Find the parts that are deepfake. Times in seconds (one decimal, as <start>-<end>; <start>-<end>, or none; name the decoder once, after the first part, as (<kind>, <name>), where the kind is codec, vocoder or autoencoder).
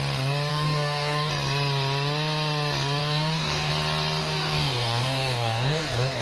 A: 0.5-1.3 (codec, DAC); 3.0-3.7; 4.2-6.2